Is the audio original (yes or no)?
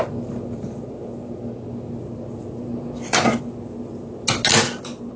yes